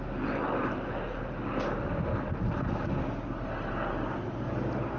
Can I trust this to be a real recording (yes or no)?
yes